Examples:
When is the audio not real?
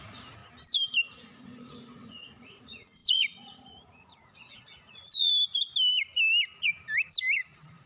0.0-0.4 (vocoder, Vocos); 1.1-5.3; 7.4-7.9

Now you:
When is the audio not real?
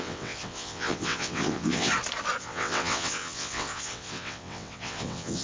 0.0-1.9 (vocoder, WaveNeXt); 2.4-5.4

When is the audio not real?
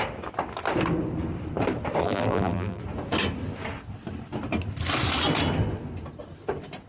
2.0-2.8 (vocoder, BigVGAN v2)